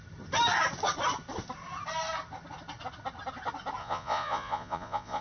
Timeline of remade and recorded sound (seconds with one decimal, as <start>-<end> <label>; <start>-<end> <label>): 0.0-3.8 recorded; 3.8-5.2 remade